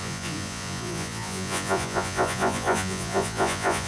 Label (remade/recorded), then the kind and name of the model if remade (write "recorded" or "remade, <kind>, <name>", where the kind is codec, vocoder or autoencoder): remade, vocoder, Vocos